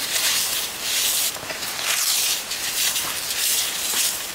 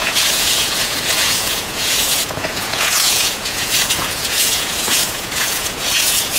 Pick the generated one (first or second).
second